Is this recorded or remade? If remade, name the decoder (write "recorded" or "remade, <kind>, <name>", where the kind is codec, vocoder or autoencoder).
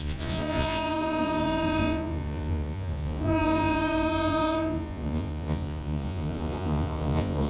remade, vocoder, Vocos